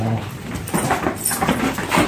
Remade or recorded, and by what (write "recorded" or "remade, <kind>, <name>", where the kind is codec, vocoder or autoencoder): recorded